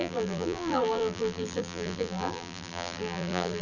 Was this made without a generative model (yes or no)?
no